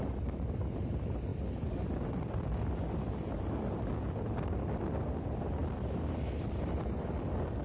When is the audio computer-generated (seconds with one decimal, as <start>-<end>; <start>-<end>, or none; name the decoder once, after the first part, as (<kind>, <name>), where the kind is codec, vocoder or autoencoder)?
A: 1.3-2.9 (vocoder, BigVGAN v2); 5.6-6.8